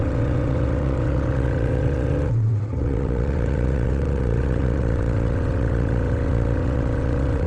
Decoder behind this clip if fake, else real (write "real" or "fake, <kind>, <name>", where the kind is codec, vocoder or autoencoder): fake, vocoder, WaveNeXt